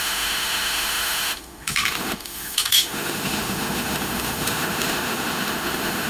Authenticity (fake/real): fake